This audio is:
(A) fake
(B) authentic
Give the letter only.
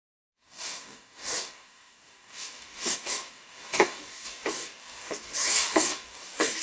A